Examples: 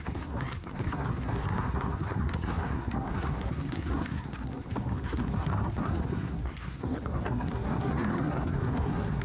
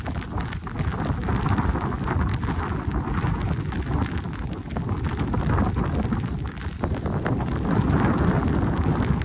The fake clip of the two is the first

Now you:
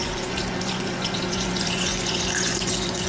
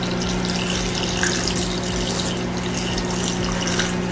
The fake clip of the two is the first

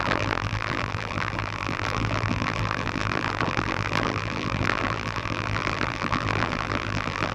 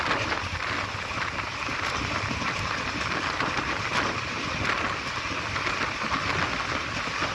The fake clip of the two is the first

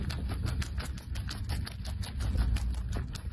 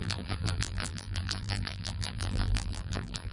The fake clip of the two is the second